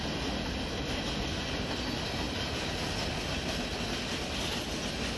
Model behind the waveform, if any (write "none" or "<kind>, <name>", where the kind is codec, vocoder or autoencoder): none